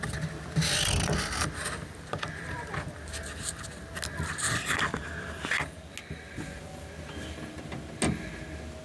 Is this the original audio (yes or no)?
yes